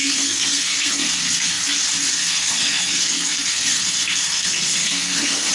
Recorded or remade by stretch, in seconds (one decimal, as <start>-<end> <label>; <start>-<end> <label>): 0.0-1.6 remade; 1.6-2.1 recorded; 2.1-5.5 remade